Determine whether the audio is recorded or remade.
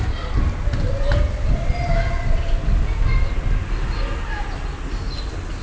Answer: recorded